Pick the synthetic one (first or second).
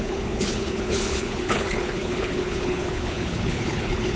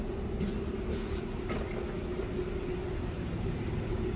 first